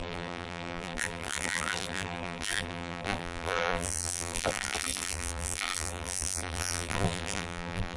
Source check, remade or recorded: remade